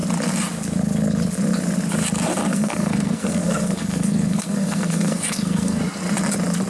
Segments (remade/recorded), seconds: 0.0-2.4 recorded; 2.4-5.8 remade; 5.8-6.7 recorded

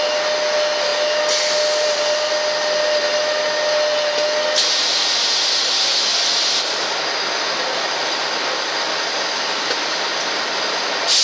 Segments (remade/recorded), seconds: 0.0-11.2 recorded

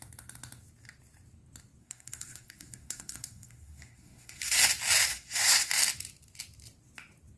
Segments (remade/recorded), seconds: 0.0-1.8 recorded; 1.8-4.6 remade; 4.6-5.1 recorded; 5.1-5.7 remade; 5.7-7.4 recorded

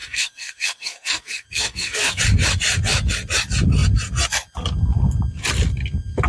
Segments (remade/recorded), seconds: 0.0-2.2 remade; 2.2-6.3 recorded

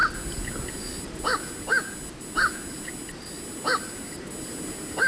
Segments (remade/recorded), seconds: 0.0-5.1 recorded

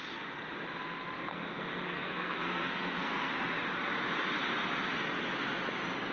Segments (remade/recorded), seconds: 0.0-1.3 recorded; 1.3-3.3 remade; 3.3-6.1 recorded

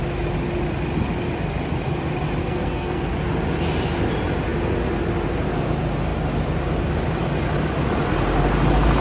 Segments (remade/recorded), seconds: 0.0-2.4 recorded; 2.4-3.0 remade; 3.0-9.0 recorded